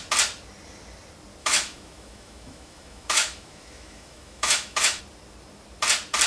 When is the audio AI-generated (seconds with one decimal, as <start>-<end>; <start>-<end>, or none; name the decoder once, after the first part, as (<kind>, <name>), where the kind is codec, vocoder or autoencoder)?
1.4-5.0 (autoencoder, DAC-VAE)